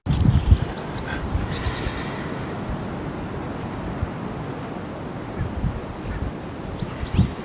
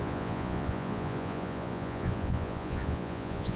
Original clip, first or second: first